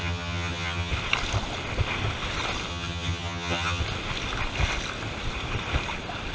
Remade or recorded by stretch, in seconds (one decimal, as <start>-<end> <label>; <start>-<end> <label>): 0.0-0.9 remade; 0.9-2.7 recorded; 2.7-3.8 remade; 3.8-6.3 recorded

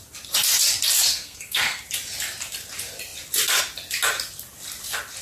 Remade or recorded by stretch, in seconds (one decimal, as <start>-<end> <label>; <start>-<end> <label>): 0.0-1.1 recorded; 1.1-1.8 remade; 1.8-5.2 recorded

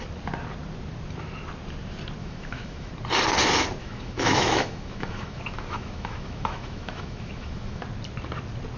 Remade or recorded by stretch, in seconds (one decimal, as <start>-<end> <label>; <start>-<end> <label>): 0.0-2.2 recorded; 2.2-2.9 remade; 2.9-3.8 recorded; 3.8-7.8 remade; 7.8-8.8 recorded